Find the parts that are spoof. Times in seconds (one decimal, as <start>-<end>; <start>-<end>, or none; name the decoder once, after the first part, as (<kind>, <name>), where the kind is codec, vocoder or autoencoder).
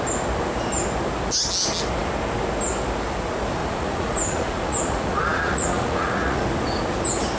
3.6-6.4 (vocoder, Vocos)